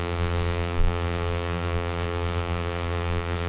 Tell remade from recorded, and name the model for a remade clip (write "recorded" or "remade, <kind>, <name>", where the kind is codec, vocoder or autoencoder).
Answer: remade, vocoder, BigVGAN v2